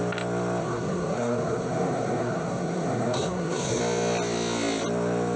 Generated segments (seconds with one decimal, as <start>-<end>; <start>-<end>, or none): 0.6-3.8